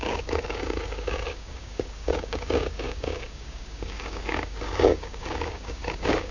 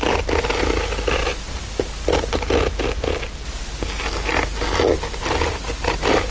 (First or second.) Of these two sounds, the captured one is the second